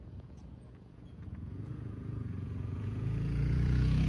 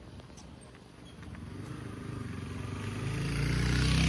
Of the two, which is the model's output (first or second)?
first